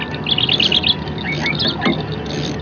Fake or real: real